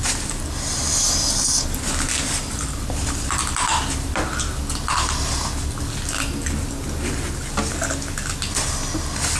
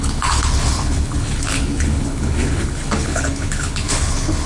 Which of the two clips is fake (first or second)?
second